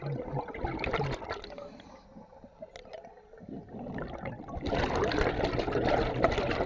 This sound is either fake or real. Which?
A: real